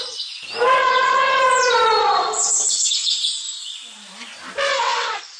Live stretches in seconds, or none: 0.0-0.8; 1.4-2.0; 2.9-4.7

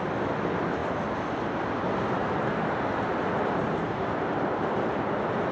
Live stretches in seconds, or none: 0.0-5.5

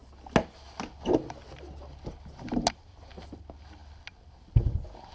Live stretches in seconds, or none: 0.0-5.1